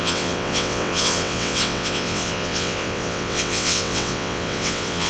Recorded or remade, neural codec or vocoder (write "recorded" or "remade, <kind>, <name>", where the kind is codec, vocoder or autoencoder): remade, vocoder, WaveNeXt